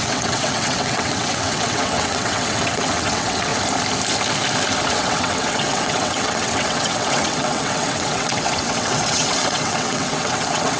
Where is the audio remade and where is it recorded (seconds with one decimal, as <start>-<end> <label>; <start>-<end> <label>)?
0.0-3.5 remade; 3.5-4.9 recorded; 4.9-10.8 remade